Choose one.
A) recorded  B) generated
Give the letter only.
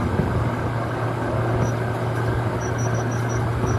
B